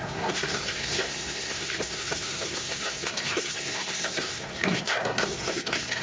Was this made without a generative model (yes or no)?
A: no